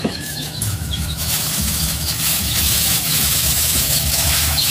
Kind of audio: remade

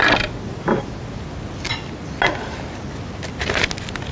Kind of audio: recorded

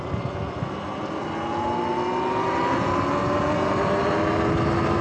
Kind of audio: recorded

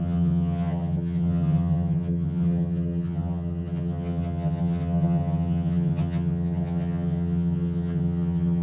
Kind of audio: remade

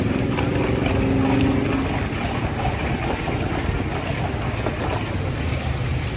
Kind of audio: recorded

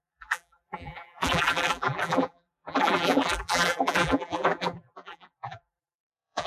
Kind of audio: remade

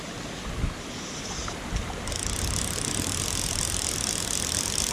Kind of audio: recorded